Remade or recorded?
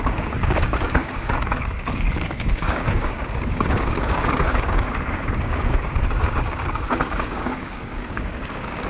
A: remade